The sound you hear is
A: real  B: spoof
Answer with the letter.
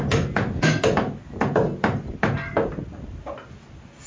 A